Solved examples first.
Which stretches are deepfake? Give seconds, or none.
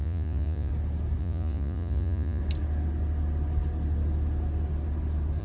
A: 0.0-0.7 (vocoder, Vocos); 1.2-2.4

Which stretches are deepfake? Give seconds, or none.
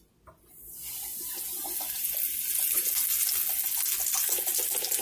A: none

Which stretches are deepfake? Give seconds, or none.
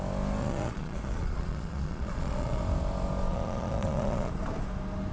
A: 0.4-2.6 (vocoder, Vocos); 3.3-4.3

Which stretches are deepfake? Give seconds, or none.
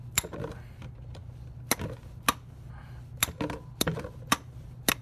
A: none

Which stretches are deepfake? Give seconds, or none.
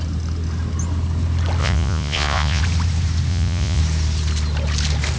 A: 1.6-2.6 (vocoder, Vocos); 3.3-3.8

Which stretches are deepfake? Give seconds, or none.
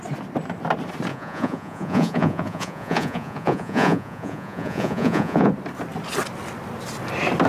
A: 1.1-5.5 (vocoder, Vocos)